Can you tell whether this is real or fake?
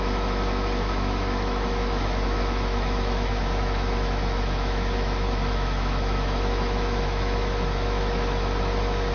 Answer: fake